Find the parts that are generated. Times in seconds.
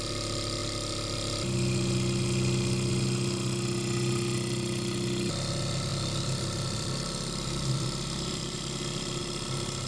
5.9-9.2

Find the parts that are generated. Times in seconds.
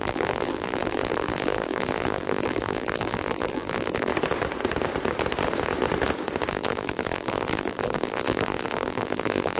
0.0-4.1; 6.5-9.6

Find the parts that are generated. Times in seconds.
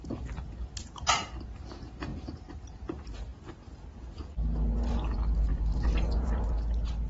2.1-2.6; 4.9-6.5